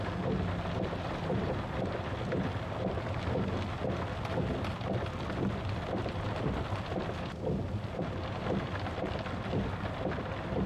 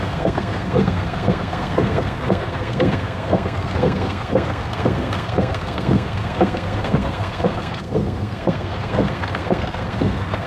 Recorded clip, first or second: first